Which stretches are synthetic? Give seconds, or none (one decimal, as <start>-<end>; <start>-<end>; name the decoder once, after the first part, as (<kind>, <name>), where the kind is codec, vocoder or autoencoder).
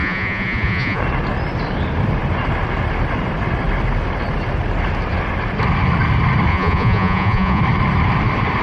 0.0-1.0 (vocoder, Vocos); 6.5-7.6